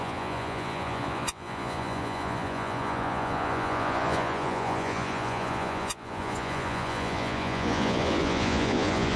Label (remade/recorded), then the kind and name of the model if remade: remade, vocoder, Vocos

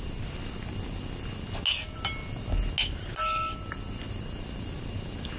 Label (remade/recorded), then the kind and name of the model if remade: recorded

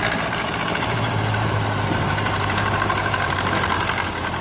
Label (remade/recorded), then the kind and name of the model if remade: remade, vocoder, BigVGAN v2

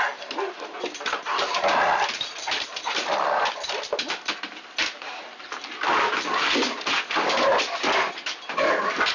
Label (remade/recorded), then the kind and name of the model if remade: remade, vocoder, BigVGAN v2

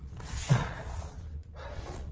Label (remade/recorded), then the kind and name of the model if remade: remade, vocoder, Vocos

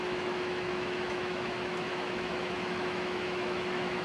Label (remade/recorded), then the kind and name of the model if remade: remade, autoencoder, DAC-VAE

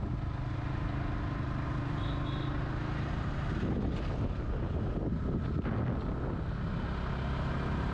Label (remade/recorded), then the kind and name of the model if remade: recorded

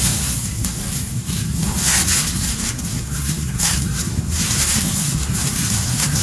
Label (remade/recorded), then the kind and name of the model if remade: remade, codec, SNAC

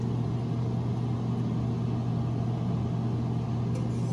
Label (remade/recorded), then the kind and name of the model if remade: recorded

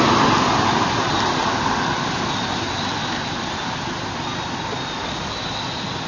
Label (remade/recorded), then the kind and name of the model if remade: recorded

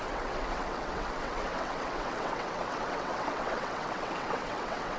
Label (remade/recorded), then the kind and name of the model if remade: remade, vocoder, WaveNeXt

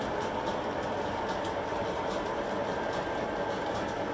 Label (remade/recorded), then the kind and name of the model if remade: recorded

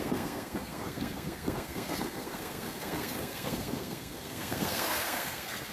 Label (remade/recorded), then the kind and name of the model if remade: remade, codec, SNAC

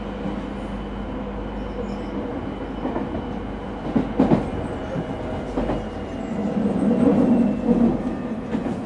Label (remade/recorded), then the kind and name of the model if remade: recorded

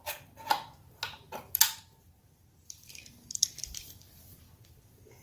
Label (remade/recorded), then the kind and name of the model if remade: remade, vocoder, BigVGAN v2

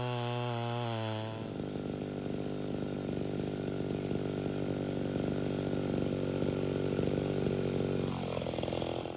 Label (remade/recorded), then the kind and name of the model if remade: recorded